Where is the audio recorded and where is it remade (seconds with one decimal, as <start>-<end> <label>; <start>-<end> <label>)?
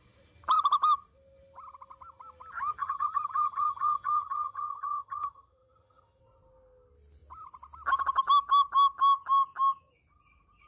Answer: 0.0-2.8 recorded; 2.8-6.2 remade; 6.2-10.7 recorded